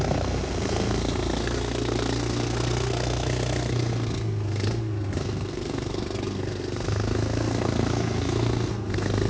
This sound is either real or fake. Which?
fake